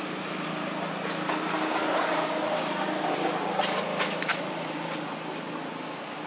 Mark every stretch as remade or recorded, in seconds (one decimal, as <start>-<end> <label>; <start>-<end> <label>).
0.0-3.9 recorded; 3.9-4.4 remade; 4.4-6.3 recorded